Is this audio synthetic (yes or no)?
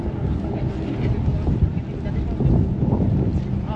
no